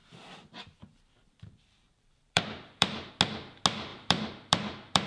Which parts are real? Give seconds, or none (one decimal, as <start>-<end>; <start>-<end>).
3.1-3.9